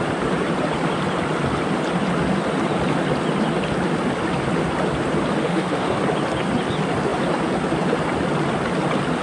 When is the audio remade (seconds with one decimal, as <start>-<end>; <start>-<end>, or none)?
5.4-6.0